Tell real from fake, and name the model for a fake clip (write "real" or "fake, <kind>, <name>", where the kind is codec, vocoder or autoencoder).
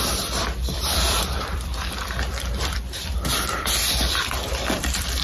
fake, vocoder, BigVGAN v2